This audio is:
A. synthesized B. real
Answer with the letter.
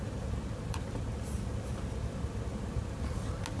B